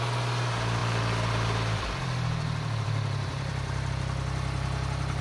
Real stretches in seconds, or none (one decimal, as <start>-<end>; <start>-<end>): 0.0-0.8; 3.9-5.2